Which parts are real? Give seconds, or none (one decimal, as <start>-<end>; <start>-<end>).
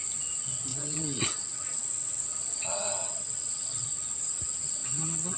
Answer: 0.0-0.7; 3.9-5.4